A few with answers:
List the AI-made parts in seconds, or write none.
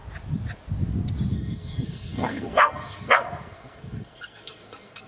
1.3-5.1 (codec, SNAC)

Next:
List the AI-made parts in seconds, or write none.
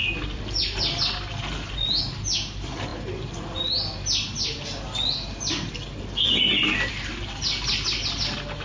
none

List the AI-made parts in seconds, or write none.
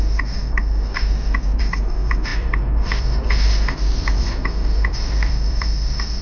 2.3-6.2 (vocoder, BigVGAN v2)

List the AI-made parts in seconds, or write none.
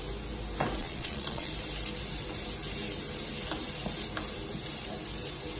0.8-1.5 (vocoder, Vocos)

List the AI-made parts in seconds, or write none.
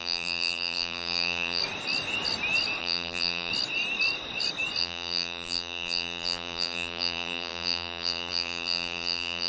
0.0-1.6 (vocoder, BigVGAN v2); 2.8-3.5; 4.8-9.5